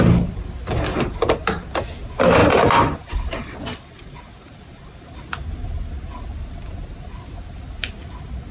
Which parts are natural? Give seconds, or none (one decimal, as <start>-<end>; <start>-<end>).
0.0-2.4; 5.2-8.5